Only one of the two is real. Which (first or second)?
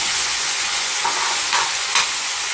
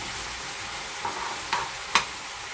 second